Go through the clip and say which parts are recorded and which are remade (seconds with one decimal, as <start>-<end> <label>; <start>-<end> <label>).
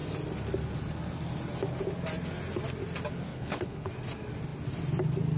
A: 0.0-3.3 recorded; 3.3-3.9 remade; 3.9-5.4 recorded